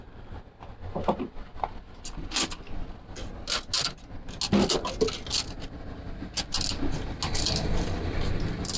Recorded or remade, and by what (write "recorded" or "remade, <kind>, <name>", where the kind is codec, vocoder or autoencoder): recorded